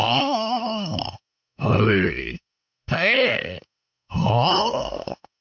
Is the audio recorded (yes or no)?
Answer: no